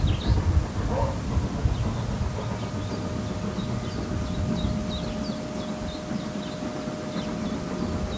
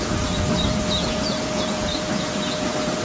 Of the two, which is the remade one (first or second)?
second